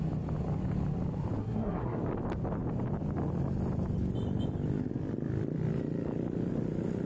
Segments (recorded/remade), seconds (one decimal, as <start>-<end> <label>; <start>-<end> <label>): 0.0-1.4 recorded; 1.4-2.0 remade; 2.0-7.1 recorded